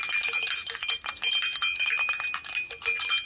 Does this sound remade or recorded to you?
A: recorded